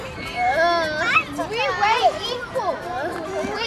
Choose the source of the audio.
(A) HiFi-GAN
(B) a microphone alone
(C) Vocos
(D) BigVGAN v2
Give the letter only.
B